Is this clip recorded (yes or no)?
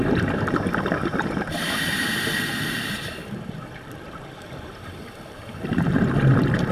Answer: no